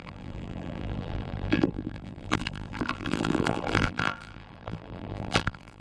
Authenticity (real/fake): fake